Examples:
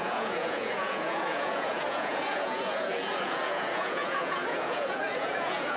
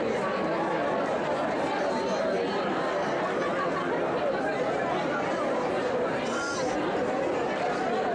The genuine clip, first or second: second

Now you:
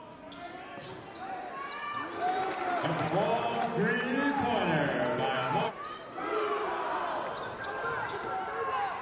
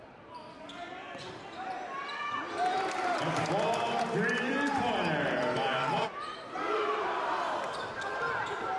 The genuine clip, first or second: first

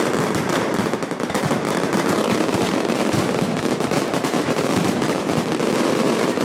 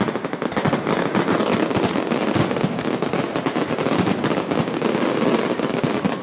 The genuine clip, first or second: second